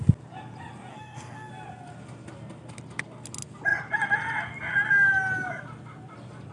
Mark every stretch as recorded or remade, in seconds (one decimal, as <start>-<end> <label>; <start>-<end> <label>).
0.0-0.9 recorded; 0.9-1.5 remade; 1.5-6.5 recorded